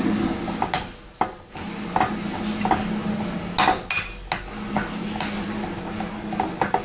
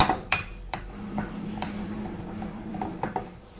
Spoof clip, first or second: second